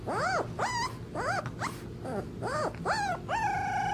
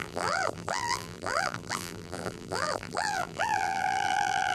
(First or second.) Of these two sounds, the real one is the first